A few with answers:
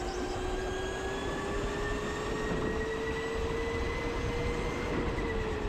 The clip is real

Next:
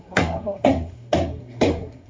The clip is fake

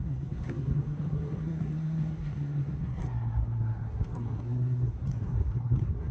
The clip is fake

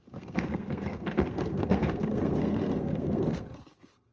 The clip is fake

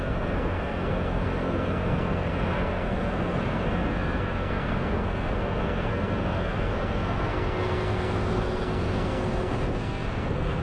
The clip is fake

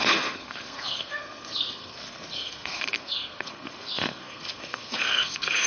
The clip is fake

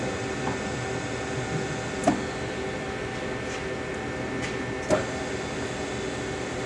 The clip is real